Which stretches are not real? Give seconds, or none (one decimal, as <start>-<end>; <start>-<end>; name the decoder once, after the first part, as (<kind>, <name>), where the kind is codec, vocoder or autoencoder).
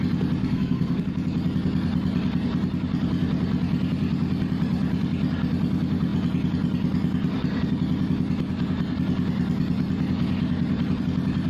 0.4-1.0 (codec, SNAC)